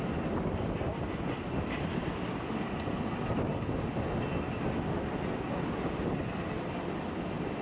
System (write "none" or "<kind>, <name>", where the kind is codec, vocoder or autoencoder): none